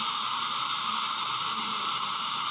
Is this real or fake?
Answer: fake